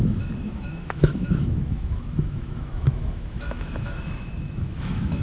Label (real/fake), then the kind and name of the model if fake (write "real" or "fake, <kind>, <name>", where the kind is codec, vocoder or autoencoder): fake, autoencoder, DAC-VAE